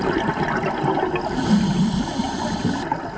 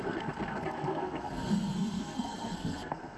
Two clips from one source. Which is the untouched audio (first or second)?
first